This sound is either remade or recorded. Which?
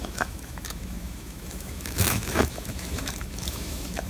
remade